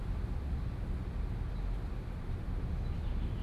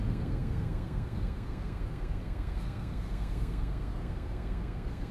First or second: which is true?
first